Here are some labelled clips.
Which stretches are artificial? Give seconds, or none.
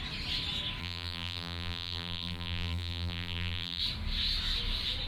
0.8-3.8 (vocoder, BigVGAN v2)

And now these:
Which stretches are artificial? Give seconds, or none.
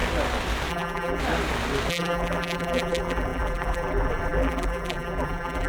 0.7-1.2 (vocoder, BigVGAN v2); 1.9-5.7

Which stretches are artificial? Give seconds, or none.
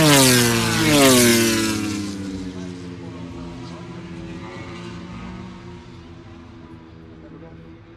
none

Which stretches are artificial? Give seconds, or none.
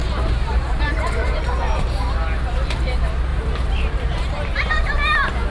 0.0-1.4 (vocoder, BigVGAN v2); 3.3-4.7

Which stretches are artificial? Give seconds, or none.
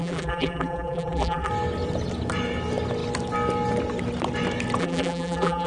0.0-1.5 (vocoder, BigVGAN v2); 4.8-5.7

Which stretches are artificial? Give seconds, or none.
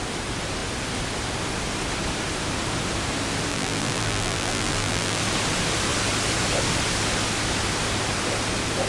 3.5-5.2 (vocoder, BigVGAN v2)